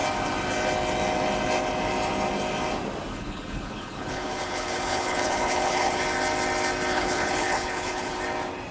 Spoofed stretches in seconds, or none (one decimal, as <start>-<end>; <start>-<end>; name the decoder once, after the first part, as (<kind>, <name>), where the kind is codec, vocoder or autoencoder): 3.1-6.0 (codec, HILCodec); 6.9-8.2